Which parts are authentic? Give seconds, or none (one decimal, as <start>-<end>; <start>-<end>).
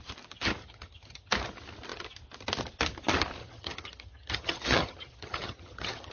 0.0-0.6; 1.3-3.4